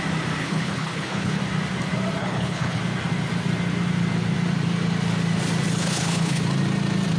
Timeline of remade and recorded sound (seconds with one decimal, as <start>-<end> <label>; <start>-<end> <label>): 0.0-0.4 recorded; 0.4-1.4 remade; 1.4-2.2 recorded; 2.2-2.8 remade; 2.8-5.8 recorded; 5.8-6.4 remade; 6.4-7.2 recorded